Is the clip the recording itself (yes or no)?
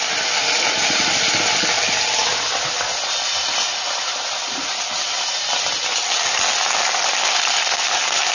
yes